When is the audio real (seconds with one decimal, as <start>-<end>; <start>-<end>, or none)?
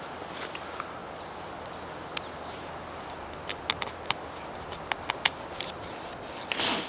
0.0-6.9